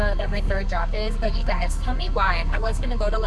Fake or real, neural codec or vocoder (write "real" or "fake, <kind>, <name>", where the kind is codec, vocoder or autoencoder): fake, codec, SNAC